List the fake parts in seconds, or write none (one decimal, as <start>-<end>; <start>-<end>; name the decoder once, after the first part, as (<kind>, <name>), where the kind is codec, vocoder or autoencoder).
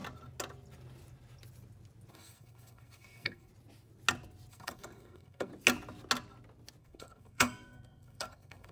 2.1-3.5 (codec, SNAC); 4.5-5.5; 6.8-8.7